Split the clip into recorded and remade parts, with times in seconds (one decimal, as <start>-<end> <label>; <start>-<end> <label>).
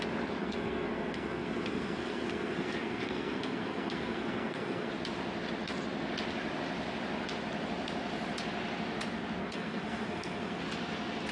0.0-0.4 recorded; 0.4-4.9 remade; 4.9-9.4 recorded; 9.4-10.6 remade; 10.6-11.3 recorded